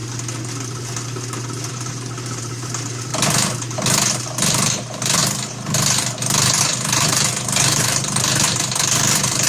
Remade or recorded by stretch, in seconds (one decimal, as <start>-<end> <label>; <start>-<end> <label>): 0.0-1.7 recorded; 1.7-3.1 remade; 3.1-4.1 recorded; 4.1-5.2 remade; 5.2-6.6 recorded; 6.6-9.5 remade